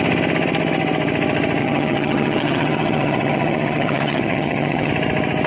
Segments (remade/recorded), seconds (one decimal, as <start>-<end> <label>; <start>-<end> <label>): 0.0-1.6 recorded; 1.6-4.9 remade; 4.9-5.5 recorded